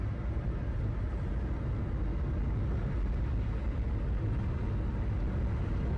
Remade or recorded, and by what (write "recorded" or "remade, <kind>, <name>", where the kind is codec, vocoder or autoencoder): recorded